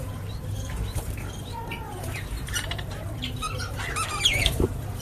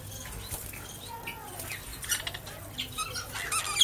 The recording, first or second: second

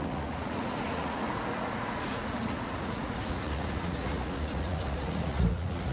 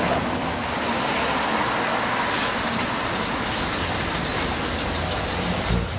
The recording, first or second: second